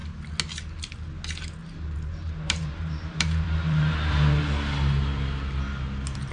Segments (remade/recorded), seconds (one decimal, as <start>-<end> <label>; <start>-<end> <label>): 0.0-1.6 recorded; 1.6-4.5 remade; 4.5-6.3 recorded